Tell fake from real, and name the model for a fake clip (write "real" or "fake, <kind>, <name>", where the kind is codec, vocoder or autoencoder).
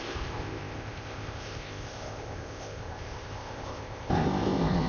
fake, codec, ZipCodec